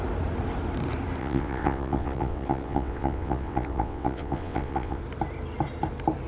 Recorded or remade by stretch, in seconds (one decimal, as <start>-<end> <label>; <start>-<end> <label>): 0.0-1.2 recorded; 1.2-5.0 remade; 5.0-6.3 recorded